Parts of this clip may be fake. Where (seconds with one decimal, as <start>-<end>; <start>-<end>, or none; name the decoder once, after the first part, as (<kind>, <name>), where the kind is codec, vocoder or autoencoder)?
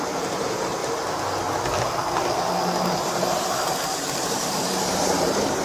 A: 0.0-0.8 (vocoder, BigVGAN v2); 3.0-5.6